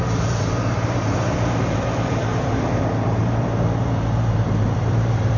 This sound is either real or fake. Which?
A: fake